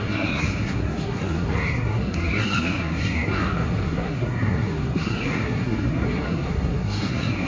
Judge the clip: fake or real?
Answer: fake